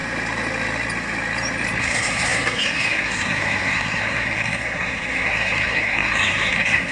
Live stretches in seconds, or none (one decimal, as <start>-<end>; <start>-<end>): 0.0-1.8